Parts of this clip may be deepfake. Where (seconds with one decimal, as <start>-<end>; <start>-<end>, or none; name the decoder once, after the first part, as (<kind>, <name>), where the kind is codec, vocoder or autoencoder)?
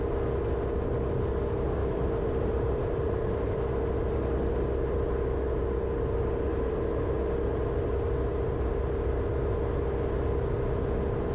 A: 1.8-3.6 (vocoder, BigVGAN v2); 8.3-9.1